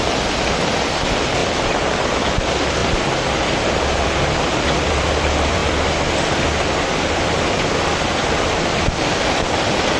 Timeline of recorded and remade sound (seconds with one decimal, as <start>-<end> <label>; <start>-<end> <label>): 0.0-5.6 remade; 5.6-6.1 recorded; 6.1-10.0 remade